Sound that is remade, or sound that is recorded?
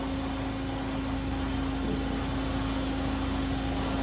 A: recorded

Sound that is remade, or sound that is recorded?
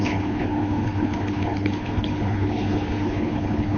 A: remade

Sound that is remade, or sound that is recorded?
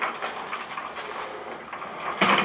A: recorded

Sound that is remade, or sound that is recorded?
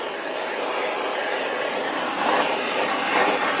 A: recorded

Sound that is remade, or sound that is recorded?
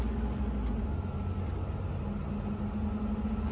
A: recorded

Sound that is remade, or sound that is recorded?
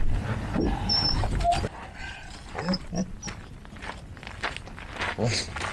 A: recorded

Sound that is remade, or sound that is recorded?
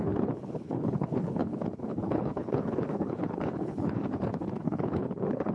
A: remade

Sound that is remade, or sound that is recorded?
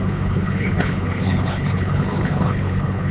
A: remade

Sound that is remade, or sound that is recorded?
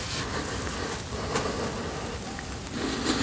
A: recorded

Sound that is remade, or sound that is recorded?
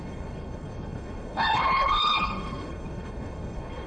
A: remade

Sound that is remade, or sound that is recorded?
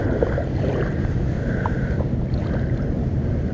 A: recorded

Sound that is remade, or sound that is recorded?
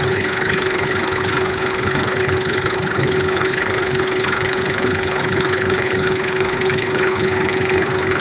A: remade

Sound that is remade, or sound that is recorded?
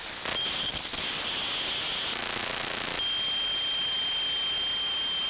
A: recorded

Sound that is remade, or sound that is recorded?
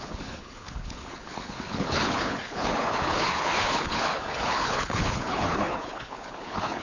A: remade